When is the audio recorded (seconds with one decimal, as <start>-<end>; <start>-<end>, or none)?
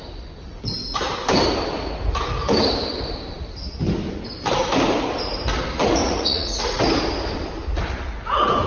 0.0-6.0; 6.8-8.7